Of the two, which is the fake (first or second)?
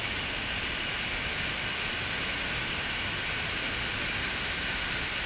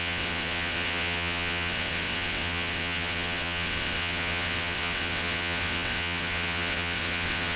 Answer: second